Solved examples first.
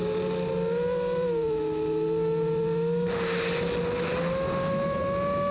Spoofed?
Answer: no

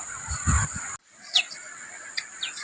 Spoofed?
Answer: no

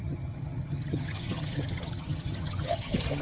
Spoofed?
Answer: yes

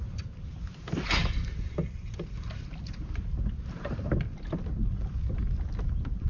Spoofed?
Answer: no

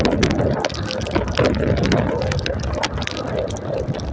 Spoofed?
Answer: no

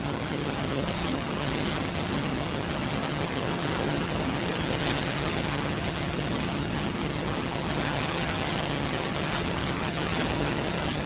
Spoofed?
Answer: yes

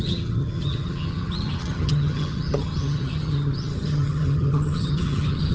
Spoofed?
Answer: yes